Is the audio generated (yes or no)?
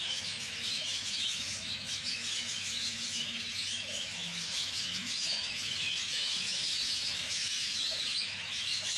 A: yes